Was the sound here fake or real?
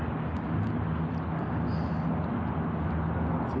real